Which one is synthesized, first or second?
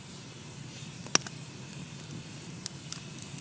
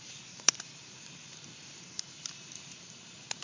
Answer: second